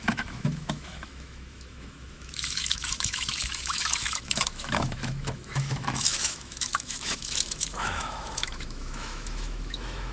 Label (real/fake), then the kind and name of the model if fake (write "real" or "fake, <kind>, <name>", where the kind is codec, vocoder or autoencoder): fake, autoencoder, DAC-VAE